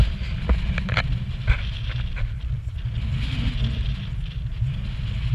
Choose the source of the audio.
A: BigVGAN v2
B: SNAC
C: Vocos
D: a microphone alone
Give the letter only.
D